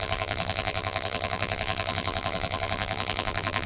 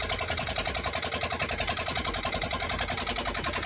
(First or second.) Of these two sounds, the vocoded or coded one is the first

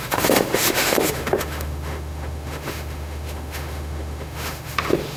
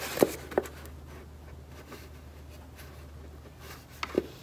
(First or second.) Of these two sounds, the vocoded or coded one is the first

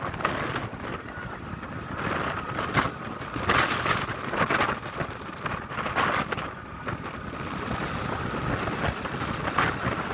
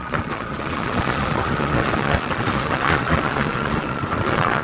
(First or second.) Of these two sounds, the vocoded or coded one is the second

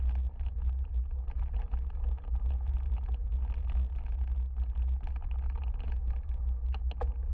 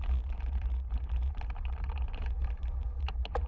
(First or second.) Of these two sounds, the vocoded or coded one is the second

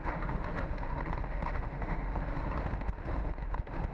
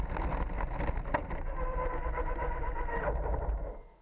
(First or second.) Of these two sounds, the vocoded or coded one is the first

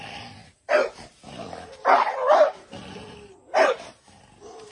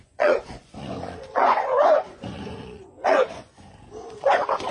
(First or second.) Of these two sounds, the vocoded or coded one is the second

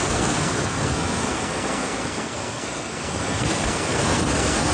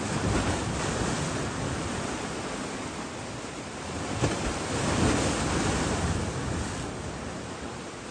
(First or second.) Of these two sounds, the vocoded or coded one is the first